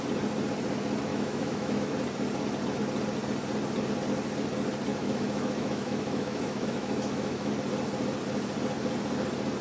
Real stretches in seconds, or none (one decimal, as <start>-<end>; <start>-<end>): 0.0-1.1; 1.9-4.9; 7.5-9.6